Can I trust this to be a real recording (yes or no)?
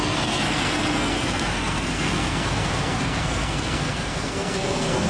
no